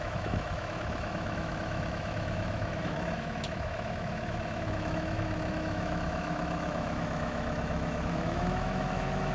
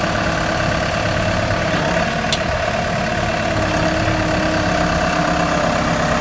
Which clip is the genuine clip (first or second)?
second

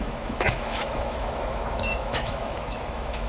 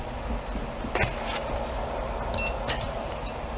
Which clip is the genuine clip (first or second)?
second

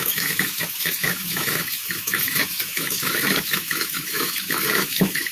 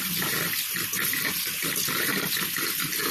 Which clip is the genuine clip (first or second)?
second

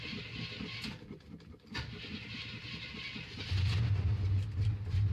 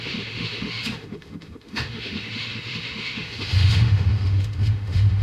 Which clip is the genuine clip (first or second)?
first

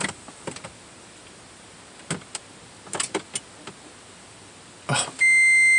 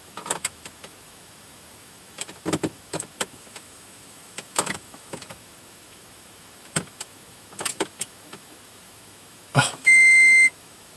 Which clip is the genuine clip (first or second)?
first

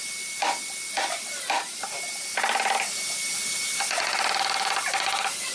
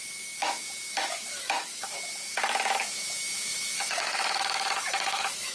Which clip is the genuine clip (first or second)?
first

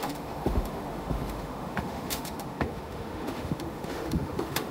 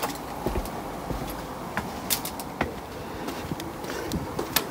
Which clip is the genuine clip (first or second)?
second